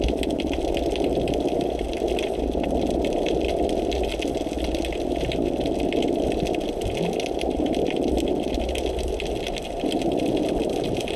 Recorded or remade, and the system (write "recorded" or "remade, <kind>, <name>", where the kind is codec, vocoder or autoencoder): recorded